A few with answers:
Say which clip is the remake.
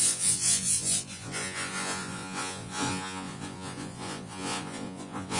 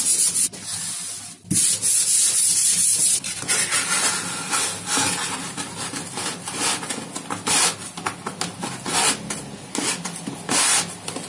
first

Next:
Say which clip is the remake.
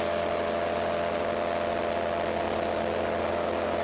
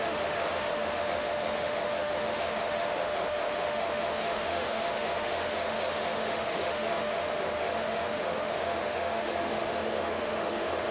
second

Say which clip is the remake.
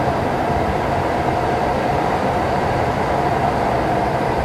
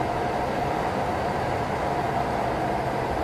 first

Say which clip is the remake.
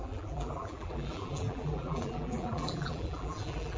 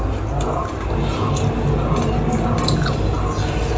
first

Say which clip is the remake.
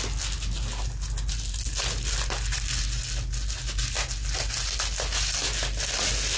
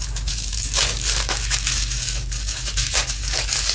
second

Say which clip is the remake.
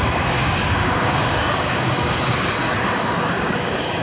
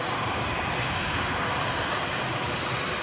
first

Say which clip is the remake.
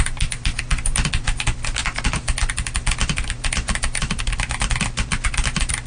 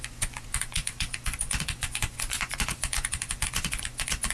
second